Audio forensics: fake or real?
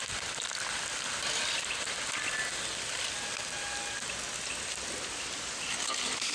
real